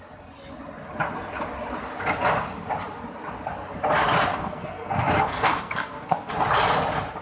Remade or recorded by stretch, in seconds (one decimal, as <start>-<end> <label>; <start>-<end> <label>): 0.0-4.3 recorded; 4.3-6.3 remade; 6.3-7.2 recorded